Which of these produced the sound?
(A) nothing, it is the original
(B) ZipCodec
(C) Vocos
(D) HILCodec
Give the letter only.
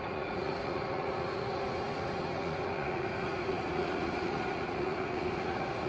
C